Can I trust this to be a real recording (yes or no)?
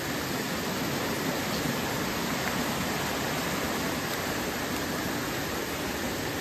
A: yes